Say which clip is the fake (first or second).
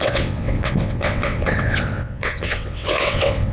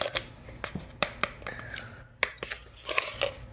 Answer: first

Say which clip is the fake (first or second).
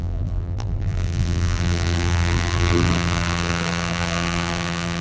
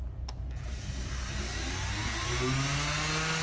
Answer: first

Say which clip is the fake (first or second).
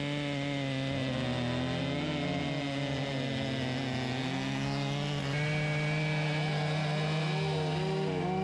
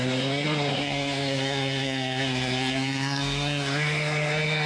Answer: second